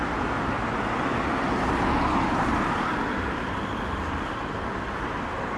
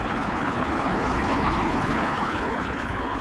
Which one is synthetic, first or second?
second